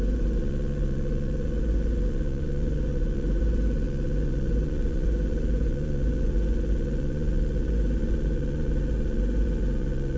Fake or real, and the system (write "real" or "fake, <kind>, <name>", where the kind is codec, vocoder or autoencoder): fake, vocoder, Vocos